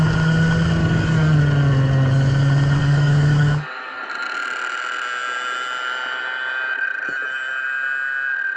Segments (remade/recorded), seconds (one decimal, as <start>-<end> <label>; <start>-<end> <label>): 0.0-0.8 recorded; 0.8-1.4 remade; 1.4-2.8 recorded; 2.8-4.0 remade; 4.0-8.6 recorded